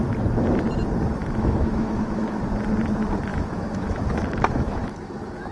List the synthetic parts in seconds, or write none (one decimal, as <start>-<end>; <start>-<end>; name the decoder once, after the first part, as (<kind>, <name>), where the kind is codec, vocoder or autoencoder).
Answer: 1.2-2.4 (autoencoder, DAC-VAE); 3.3-5.5